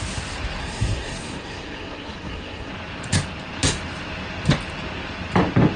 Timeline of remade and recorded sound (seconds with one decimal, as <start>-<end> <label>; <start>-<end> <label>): 0.0-0.6 recorded; 0.6-2.7 remade; 2.7-5.8 recorded

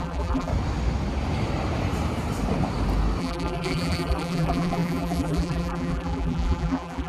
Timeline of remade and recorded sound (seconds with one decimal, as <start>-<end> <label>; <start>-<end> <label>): 0.0-0.5 remade; 0.5-3.2 recorded; 3.2-7.1 remade

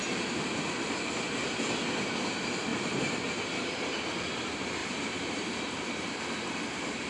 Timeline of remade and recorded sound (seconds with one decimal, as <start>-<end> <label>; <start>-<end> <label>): 0.0-2.7 recorded; 2.7-4.0 remade; 4.0-4.8 recorded; 4.8-6.1 remade; 6.1-7.1 recorded

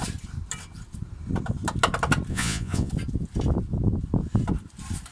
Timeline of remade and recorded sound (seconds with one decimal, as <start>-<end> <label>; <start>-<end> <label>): 0.0-2.3 recorded; 2.3-2.9 remade; 2.9-5.1 recorded

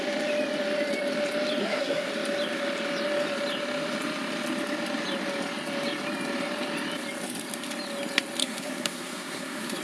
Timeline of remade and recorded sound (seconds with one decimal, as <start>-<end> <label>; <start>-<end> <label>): 0.0-1.6 recorded; 1.6-2.1 remade; 2.1-8.4 recorded; 8.4-9.8 remade

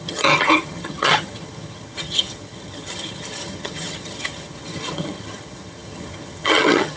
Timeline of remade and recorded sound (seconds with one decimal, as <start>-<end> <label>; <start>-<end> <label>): 0.0-7.0 remade